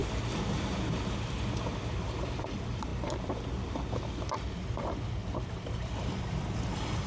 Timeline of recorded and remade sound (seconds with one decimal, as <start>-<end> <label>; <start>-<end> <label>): 0.0-7.1 recorded